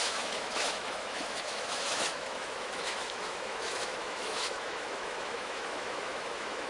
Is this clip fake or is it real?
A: fake